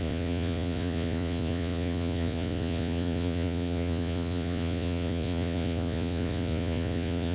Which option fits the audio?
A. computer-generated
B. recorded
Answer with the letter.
A